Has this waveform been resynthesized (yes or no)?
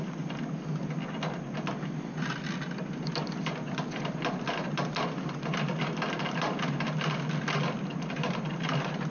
no